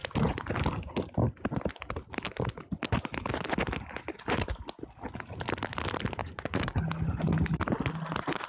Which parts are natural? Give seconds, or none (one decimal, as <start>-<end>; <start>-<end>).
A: 0.0-6.2; 6.8-8.5